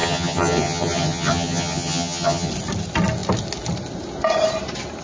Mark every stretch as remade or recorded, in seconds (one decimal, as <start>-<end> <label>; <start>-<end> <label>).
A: 0.0-2.5 remade; 2.5-5.0 recorded